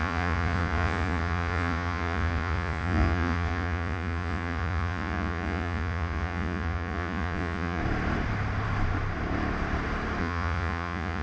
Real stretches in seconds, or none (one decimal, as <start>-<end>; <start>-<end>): 7.8-10.2